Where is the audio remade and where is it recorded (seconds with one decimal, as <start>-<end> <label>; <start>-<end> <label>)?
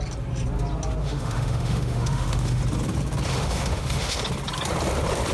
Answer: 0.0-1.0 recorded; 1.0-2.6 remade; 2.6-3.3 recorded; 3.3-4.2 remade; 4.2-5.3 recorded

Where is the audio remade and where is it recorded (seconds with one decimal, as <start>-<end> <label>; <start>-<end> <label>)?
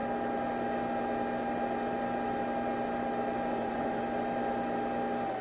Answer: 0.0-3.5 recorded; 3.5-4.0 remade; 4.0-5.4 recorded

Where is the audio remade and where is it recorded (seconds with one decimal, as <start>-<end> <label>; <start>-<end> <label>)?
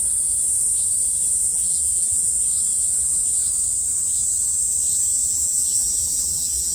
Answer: 0.0-1.5 recorded; 1.5-2.3 remade; 2.3-5.2 recorded; 5.2-6.7 remade